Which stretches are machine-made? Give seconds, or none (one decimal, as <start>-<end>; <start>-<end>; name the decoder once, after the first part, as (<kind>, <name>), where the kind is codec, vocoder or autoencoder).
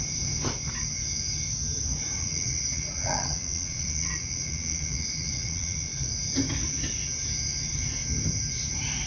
2.2-6.1 (vocoder, Vocos)